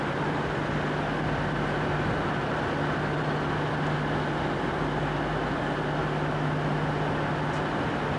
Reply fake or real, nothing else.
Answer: real